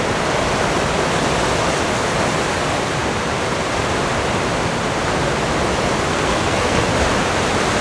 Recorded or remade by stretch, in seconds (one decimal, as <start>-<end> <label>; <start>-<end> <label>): 0.0-6.1 recorded; 6.1-6.9 remade; 6.9-7.8 recorded